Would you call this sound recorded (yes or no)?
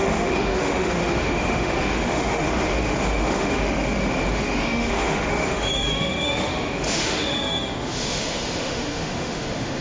no